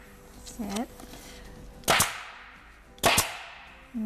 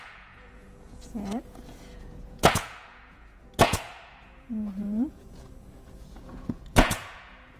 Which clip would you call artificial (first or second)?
second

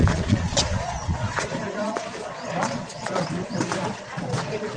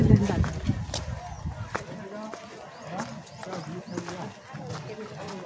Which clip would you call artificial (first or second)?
first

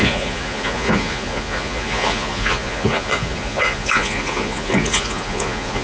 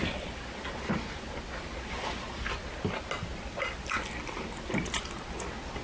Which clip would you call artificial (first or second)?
first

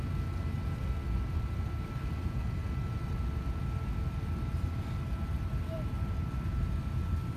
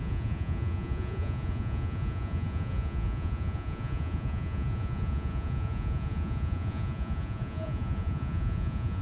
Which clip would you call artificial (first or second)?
second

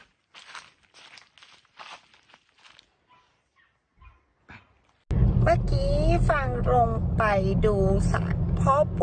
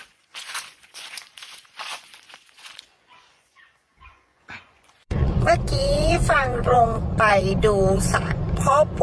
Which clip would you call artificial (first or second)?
second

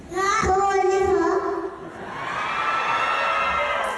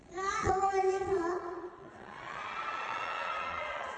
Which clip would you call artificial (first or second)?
second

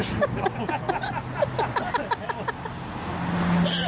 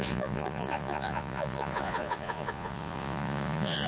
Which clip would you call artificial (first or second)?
second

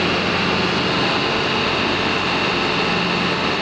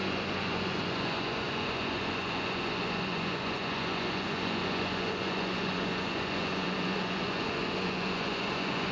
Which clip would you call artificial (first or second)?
second